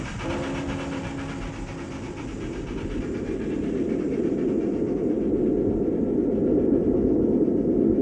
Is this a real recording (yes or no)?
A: yes